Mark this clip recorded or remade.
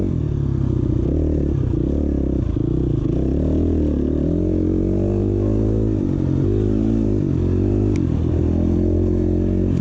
recorded